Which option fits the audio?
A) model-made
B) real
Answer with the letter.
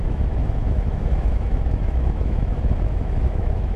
A